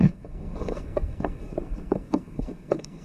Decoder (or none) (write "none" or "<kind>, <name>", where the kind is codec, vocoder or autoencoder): codec, SNAC